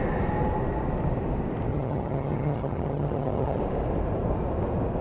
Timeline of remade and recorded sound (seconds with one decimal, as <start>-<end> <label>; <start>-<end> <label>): 0.0-1.7 recorded; 1.7-3.6 remade; 3.6-5.0 recorded